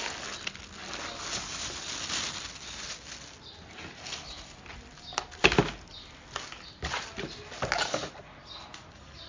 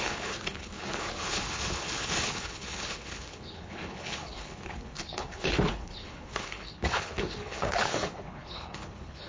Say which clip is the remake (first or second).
second